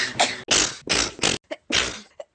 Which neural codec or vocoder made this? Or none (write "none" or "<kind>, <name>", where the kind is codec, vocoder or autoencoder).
none